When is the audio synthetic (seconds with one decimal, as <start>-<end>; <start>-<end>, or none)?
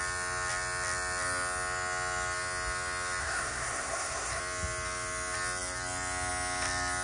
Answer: 3.2-4.4